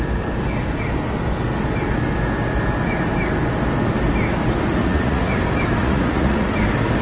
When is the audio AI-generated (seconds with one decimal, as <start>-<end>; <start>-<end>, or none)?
4.8-5.3; 5.8-6.5